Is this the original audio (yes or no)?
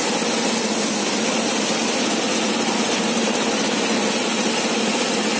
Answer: yes